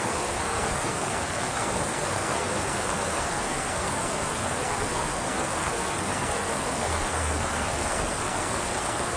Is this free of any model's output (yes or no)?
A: no